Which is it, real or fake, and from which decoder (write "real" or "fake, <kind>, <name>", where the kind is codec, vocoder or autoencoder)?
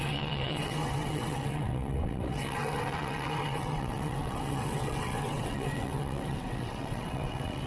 fake, vocoder, WaveNeXt